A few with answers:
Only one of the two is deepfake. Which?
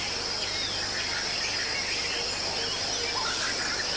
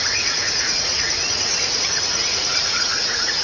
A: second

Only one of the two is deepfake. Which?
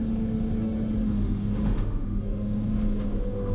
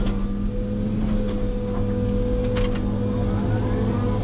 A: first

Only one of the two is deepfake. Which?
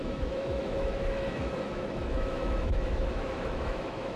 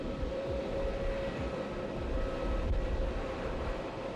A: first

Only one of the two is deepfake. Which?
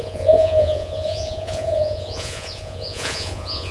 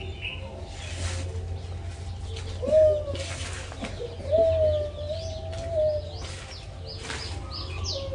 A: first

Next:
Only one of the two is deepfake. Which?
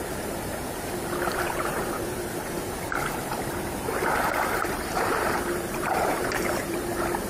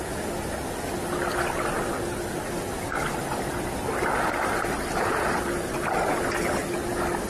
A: first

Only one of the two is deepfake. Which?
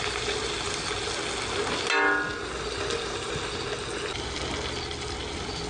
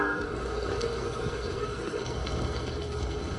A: second